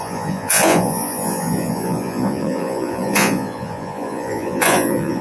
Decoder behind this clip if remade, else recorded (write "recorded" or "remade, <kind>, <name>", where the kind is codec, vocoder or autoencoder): remade, vocoder, Vocos